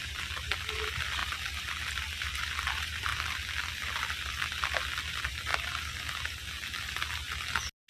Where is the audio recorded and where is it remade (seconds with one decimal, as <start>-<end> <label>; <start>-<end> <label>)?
0.0-1.2 remade; 1.2-2.4 recorded; 2.4-5.5 remade; 5.5-7.9 recorded

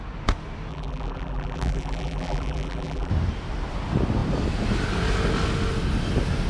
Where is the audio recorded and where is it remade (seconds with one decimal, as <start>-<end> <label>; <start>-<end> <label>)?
0.0-0.7 recorded; 0.7-3.1 remade; 3.1-6.5 recorded

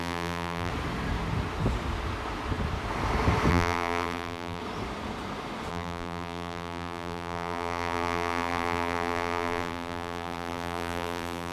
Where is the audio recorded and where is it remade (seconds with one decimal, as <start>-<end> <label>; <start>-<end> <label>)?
0.0-0.7 remade; 0.7-3.5 recorded; 3.5-4.6 remade; 4.6-5.7 recorded; 5.7-11.5 remade

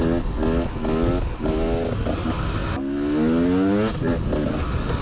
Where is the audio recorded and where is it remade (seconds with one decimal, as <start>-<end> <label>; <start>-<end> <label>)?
0.0-5.0 recorded

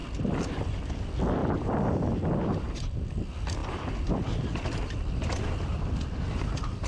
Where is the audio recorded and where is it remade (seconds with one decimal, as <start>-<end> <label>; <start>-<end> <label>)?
0.0-0.7 remade; 0.7-1.4 recorded; 1.4-3.1 remade; 3.1-3.6 recorded; 3.6-6.5 remade; 6.5-6.9 recorded

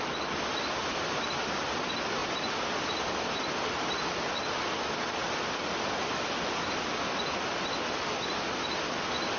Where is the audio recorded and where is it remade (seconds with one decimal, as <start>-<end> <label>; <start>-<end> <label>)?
0.0-9.4 recorded

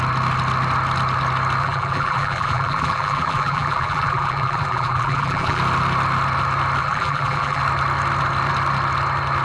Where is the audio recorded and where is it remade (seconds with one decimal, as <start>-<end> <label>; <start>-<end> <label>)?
0.0-1.6 recorded; 1.6-5.6 remade; 5.6-6.8 recorded; 6.8-7.6 remade; 7.6-9.4 recorded